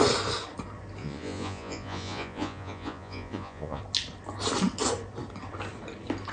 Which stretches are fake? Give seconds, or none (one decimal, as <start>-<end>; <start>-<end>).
1.0-3.8